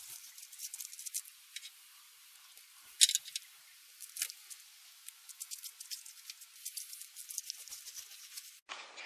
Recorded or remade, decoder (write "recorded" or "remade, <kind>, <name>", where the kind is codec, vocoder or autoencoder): recorded